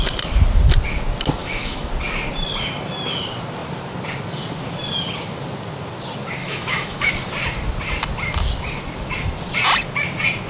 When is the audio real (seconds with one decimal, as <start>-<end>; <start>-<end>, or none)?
0.0-1.4; 1.9-6.4; 7.1-10.5